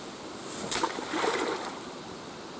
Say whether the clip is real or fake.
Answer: real